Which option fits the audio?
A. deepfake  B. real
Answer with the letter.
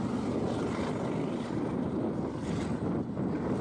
B